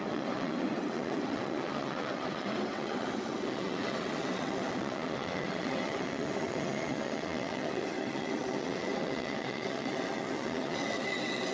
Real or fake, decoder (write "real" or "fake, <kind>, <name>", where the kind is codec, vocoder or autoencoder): fake, vocoder, WaveNeXt